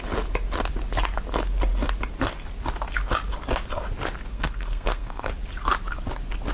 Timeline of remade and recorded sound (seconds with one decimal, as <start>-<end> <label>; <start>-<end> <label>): 0.0-4.3 recorded; 4.3-5.3 remade; 5.3-6.5 recorded